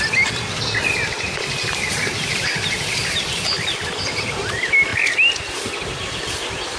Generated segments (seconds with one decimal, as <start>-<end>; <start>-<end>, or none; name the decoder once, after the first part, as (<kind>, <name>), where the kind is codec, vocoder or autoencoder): 0.0-4.9 (vocoder, BigVGAN v2); 5.7-6.8